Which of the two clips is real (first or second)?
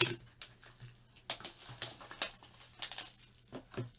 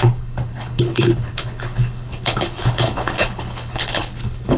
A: first